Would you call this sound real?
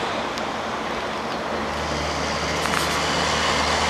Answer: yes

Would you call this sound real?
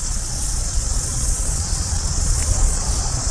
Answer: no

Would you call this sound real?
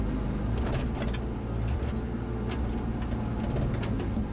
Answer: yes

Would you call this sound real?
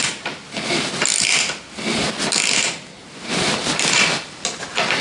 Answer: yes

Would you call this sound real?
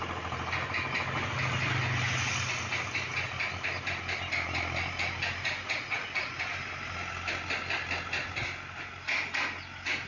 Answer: yes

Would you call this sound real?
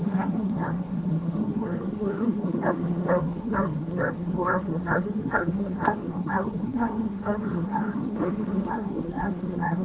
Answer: no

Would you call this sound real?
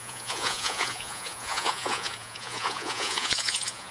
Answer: no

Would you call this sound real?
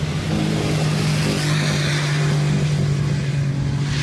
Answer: yes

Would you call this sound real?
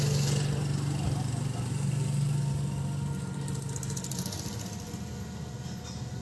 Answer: yes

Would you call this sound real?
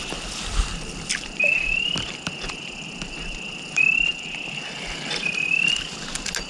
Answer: yes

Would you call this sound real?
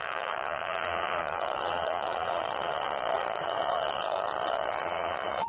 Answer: no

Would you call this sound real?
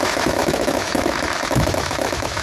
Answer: no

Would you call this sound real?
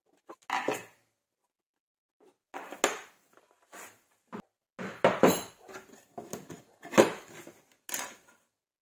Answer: yes